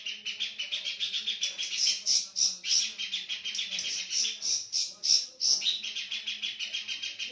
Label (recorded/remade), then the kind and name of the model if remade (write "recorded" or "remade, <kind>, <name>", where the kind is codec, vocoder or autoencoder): recorded